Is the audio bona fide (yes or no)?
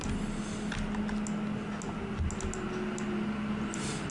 yes